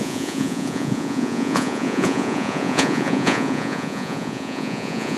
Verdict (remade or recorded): remade